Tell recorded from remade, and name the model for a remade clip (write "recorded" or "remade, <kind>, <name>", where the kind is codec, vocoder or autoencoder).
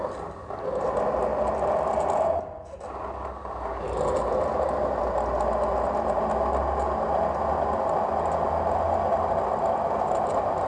recorded